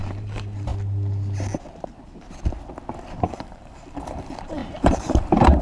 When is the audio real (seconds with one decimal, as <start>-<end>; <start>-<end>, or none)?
0.7-3.3